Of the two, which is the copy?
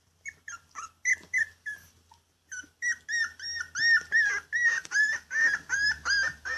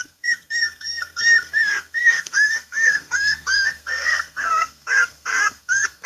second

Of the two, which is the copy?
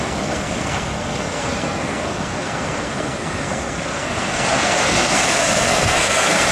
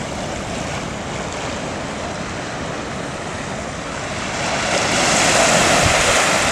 first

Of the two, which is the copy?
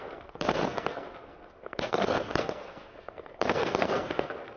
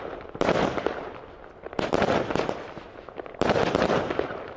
first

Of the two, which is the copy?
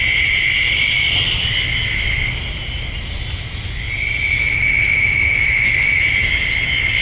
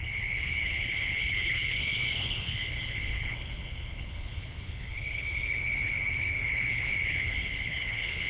second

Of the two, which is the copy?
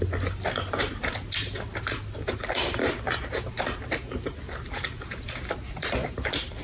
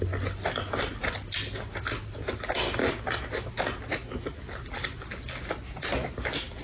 first